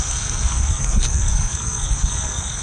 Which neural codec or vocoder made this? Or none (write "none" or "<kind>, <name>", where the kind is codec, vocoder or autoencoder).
codec, SNAC